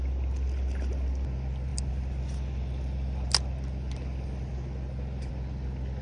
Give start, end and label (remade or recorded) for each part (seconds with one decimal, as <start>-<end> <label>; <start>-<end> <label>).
0.0-6.0 recorded